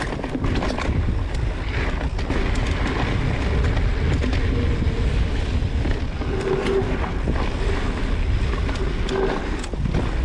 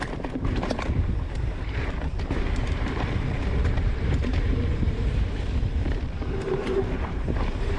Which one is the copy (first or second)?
second